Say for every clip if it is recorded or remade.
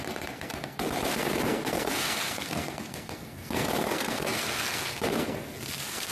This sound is remade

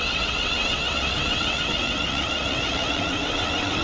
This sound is remade